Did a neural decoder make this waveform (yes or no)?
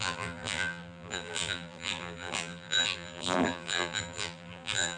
yes